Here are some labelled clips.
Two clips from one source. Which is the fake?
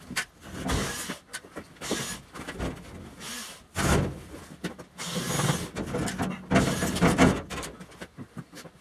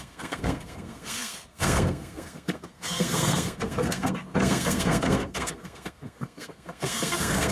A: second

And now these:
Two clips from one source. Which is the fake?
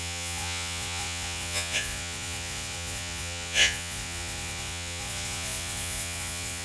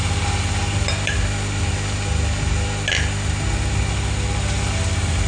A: first